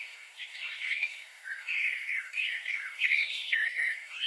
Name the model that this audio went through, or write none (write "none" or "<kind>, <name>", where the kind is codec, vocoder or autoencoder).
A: codec, SNAC